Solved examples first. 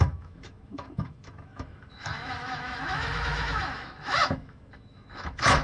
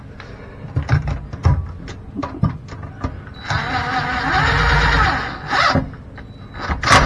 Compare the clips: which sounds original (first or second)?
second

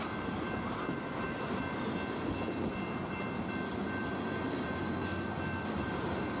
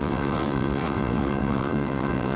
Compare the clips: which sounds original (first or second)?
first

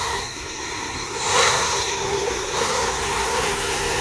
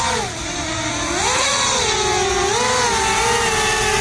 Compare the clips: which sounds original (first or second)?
second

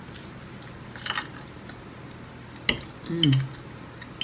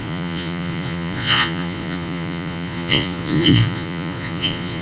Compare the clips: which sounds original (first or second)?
first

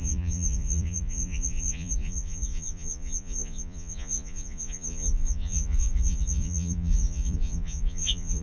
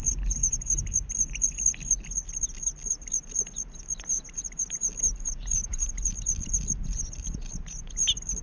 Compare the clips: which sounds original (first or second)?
second